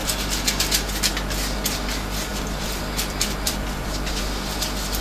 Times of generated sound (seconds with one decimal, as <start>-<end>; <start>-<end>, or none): 2.3-4.2